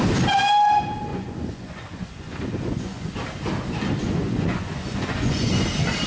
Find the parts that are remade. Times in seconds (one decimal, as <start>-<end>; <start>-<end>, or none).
1.1-3.2; 4.0-5.5